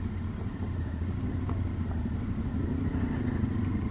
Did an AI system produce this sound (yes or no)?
no